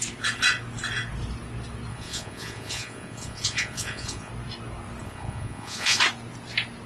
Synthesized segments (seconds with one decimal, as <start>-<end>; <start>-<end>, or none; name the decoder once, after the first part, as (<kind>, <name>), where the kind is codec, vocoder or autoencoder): 1.9-4.3 (vocoder, Vocos); 5.0-6.0